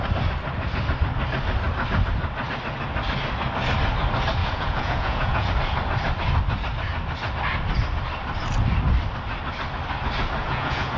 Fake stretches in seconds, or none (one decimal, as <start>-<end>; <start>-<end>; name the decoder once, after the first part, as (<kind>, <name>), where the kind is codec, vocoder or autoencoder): 4.4-5.5 (vocoder, Vocos); 10.4-11.0